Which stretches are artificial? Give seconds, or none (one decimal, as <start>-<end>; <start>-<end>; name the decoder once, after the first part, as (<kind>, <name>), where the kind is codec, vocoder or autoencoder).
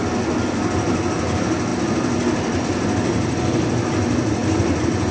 none